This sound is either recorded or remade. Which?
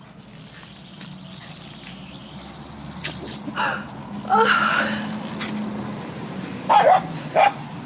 recorded